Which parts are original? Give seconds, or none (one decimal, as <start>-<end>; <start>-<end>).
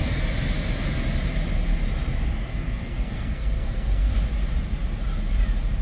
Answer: 0.0-2.5; 4.1-5.8